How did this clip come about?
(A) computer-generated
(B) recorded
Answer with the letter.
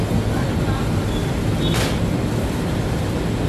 B